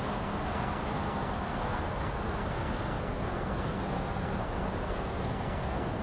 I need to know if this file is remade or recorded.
remade